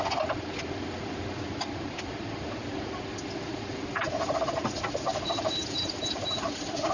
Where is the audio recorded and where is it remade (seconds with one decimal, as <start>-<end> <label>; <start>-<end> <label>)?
0.0-6.9 recorded